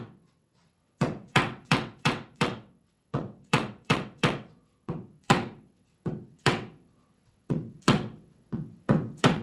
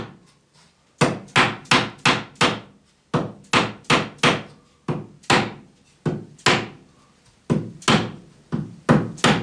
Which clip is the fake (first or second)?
first